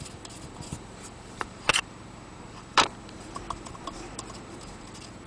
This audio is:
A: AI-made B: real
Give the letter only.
A